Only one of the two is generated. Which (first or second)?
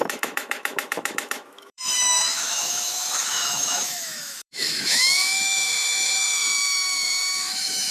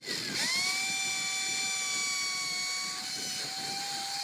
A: first